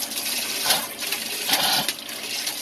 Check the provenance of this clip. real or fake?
real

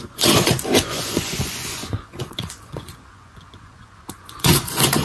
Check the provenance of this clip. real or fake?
fake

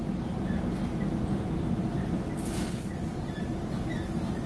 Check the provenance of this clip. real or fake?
real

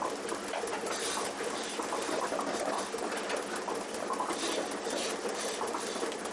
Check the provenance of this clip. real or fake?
real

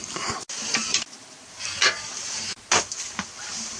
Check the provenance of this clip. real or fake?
real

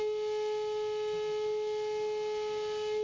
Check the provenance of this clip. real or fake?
real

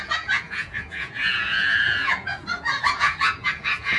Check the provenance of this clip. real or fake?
fake